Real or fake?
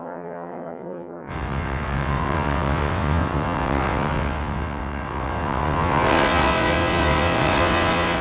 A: fake